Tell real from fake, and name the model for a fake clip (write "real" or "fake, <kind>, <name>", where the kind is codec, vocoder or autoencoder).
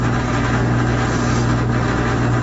real